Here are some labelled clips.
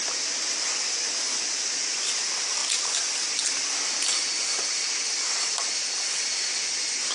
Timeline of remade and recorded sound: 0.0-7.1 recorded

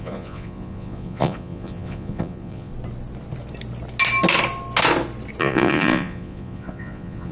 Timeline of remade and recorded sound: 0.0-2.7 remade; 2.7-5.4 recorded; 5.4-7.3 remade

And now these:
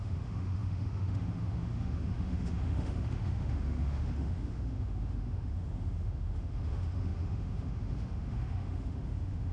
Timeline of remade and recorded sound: 0.0-9.5 remade

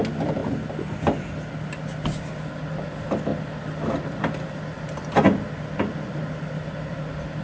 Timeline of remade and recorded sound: 0.0-7.4 recorded